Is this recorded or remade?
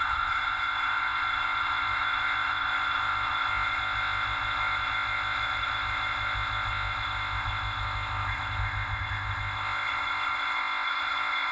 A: remade